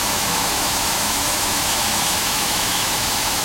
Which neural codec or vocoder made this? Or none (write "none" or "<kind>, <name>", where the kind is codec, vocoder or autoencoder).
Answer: autoencoder, DAC-VAE